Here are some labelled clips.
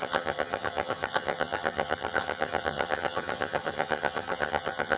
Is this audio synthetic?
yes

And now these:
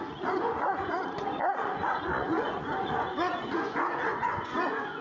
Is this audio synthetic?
yes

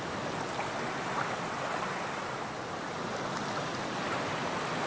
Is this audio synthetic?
no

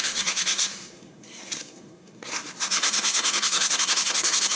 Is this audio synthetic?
yes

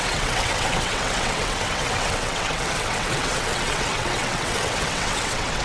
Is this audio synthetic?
yes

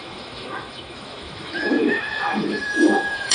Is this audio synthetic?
yes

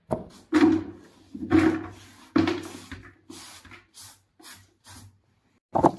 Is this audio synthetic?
no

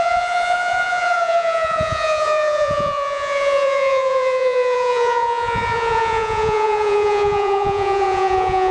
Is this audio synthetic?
yes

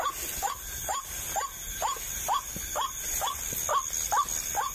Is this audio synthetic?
no